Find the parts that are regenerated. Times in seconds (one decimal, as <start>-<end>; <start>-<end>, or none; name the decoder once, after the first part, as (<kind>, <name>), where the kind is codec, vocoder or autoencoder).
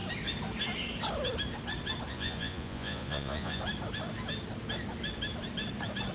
2.1-3.6 (vocoder, Vocos)